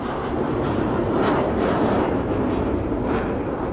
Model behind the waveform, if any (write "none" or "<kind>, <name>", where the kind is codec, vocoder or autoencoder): vocoder, BigVGAN v2